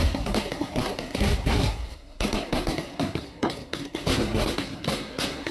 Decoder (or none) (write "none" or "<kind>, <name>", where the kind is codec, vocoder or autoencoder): codec, SNAC